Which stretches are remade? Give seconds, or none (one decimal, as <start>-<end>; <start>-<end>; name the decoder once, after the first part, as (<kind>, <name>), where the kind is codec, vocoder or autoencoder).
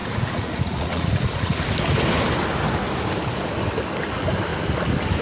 0.0-1.6 (vocoder, Vocos)